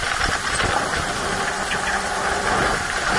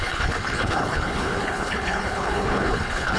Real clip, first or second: first